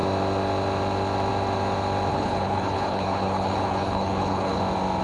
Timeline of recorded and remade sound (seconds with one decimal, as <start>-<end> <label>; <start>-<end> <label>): 0.0-2.1 recorded; 2.1-4.6 remade; 4.6-5.0 recorded